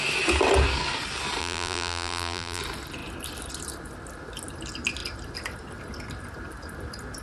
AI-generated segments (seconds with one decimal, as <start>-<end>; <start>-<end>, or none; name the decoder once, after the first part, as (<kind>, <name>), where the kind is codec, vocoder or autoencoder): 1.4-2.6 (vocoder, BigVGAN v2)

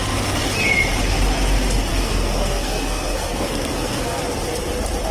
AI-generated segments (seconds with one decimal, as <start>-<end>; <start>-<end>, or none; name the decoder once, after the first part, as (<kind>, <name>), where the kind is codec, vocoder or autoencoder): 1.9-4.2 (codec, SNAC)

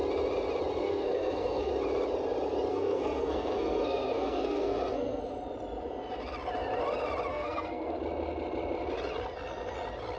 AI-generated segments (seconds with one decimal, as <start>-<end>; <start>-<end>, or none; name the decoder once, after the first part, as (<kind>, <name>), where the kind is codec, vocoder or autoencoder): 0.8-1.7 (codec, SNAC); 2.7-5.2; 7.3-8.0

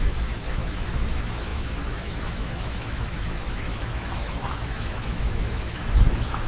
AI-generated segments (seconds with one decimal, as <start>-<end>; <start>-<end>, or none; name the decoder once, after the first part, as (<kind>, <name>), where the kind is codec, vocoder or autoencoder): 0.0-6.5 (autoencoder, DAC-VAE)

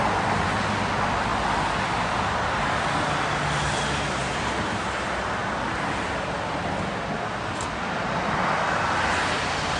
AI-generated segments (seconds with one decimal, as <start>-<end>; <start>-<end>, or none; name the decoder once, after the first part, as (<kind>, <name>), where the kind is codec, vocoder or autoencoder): none

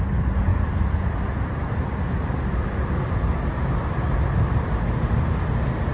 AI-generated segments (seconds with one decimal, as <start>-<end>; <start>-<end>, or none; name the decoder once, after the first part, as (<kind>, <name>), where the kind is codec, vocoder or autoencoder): none

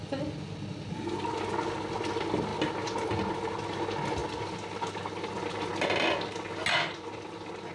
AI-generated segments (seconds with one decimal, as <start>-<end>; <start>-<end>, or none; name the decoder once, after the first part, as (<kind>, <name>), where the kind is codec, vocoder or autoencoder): none

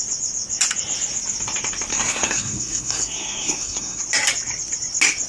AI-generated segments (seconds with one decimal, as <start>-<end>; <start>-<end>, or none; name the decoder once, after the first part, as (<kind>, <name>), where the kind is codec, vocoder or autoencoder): 1.9-4.0 (codec, SNAC)